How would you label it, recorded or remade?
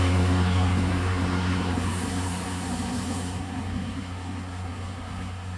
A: remade